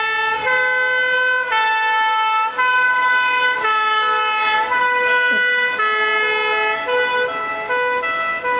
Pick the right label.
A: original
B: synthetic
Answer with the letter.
A